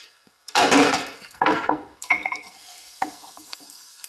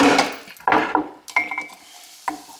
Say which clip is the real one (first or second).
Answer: second